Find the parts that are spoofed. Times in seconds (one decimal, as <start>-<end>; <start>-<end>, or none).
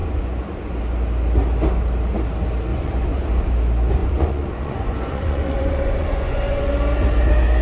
0.0-0.7; 2.7-3.5; 4.0-6.7